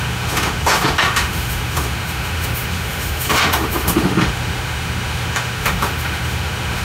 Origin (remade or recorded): remade